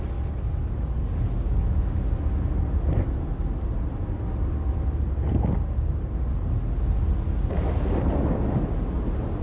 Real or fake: real